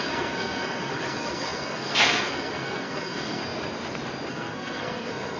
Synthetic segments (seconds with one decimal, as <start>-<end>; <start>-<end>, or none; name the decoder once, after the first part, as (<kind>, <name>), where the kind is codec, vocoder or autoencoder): 0.0-3.4 (codec, SNAC); 4.3-5.4